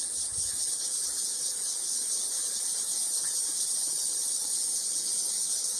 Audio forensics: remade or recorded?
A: remade